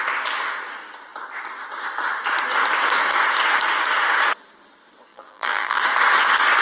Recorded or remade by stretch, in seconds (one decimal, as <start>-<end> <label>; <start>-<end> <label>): 0.0-5.1 recorded; 5.1-5.8 remade; 5.8-6.6 recorded